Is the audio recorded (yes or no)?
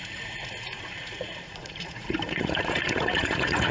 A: no